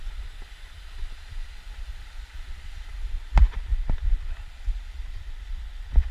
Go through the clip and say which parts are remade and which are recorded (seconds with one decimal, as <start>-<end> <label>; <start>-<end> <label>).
0.0-3.7 remade; 3.7-4.4 recorded; 4.4-6.1 remade